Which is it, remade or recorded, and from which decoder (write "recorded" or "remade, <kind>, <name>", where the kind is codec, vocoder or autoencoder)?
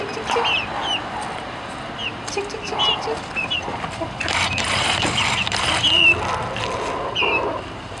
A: recorded